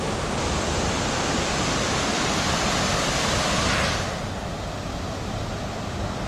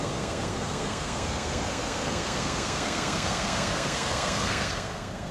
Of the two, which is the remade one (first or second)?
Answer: second